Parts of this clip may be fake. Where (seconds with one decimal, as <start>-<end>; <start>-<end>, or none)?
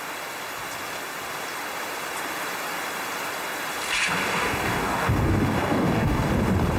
4.2-6.3